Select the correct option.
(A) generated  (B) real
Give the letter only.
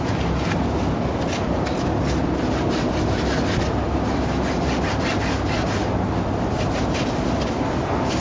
B